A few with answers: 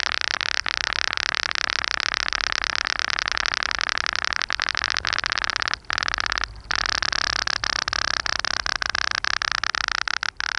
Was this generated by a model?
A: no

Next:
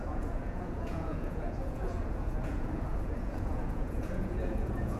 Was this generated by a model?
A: yes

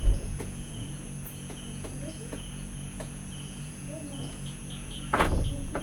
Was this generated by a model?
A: yes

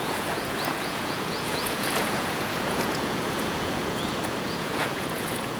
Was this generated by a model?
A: yes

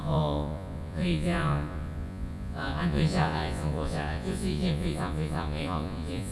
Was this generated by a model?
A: yes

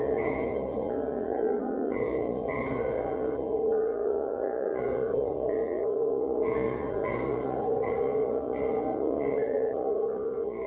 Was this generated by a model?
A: yes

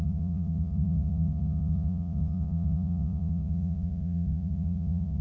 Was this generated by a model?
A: yes